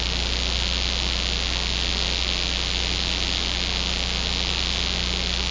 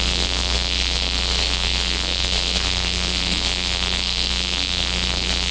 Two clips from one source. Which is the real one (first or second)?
first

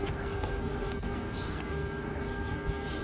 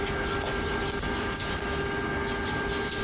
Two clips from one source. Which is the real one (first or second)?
second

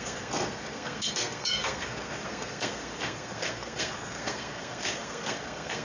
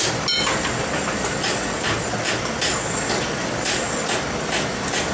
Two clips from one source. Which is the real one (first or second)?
second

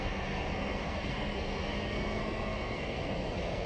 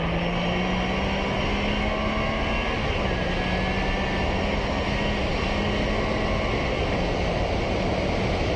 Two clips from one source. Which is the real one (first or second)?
second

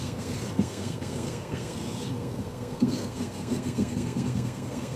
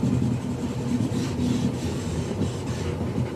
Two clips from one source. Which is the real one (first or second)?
second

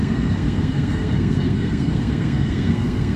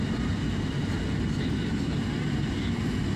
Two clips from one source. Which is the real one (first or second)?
second